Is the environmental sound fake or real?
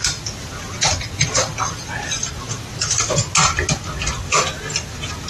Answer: real